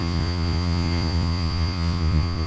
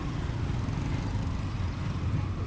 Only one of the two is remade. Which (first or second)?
first